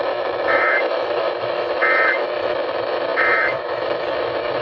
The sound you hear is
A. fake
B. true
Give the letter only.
A